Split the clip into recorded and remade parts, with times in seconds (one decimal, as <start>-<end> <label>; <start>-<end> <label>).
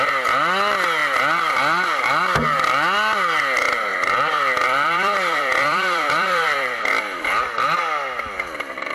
0.0-3.9 recorded; 3.9-7.2 remade; 7.2-8.9 recorded